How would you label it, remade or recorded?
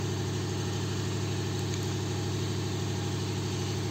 recorded